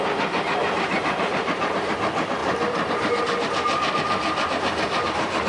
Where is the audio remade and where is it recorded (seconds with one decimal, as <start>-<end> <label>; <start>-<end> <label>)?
0.0-0.6 recorded; 0.6-1.9 remade; 1.9-2.4 recorded; 2.4-3.2 remade; 3.2-5.5 recorded